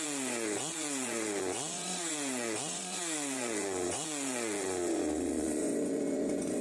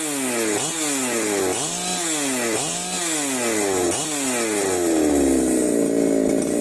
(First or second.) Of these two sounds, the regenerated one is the first